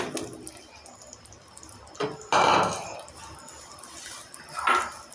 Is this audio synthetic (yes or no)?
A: no